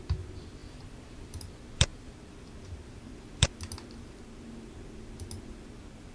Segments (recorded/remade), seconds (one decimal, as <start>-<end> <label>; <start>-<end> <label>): 0.0-6.1 recorded